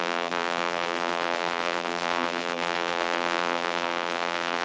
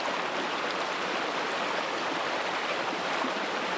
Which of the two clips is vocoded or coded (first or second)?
first